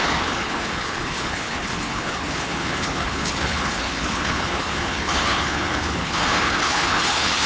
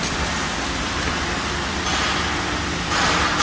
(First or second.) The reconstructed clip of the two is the first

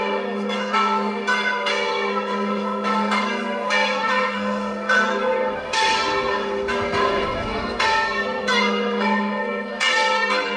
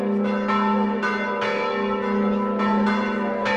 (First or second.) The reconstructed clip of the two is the first